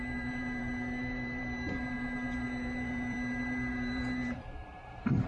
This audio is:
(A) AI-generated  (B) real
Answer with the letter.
A